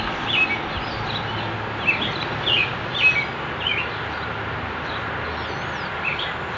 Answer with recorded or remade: recorded